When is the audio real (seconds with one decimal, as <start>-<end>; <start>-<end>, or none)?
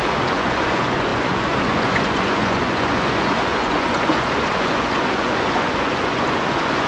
none